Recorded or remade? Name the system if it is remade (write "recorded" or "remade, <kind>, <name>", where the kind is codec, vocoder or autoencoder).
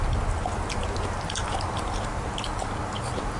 recorded